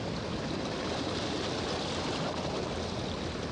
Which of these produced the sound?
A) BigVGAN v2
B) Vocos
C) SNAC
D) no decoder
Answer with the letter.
D